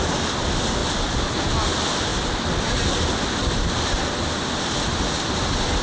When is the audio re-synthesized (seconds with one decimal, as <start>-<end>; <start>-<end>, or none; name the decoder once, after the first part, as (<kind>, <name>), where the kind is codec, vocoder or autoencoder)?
none